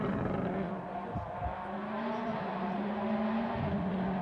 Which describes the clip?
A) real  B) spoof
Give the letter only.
A